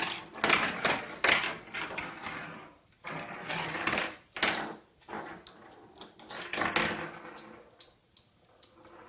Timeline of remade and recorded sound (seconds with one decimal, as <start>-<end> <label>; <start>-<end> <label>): 0.0-2.4 recorded; 2.4-5.4 remade; 5.4-9.1 recorded